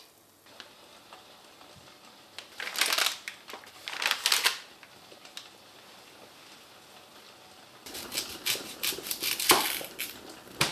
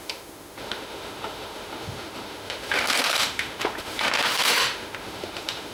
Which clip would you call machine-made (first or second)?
second